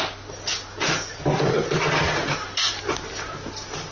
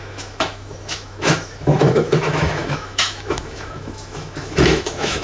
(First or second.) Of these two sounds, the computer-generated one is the second